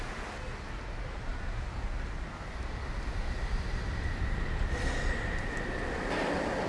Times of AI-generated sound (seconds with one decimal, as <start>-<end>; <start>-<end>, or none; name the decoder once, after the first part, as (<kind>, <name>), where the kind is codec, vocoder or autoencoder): none

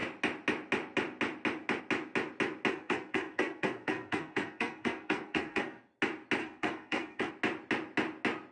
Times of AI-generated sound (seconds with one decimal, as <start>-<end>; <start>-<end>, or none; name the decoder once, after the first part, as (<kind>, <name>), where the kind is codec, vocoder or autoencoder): 2.7-5.9 (codec, SNAC); 6.4-7.3